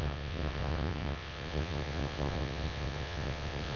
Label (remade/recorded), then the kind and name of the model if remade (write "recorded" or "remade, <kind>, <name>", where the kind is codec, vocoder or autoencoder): remade, vocoder, WaveNeXt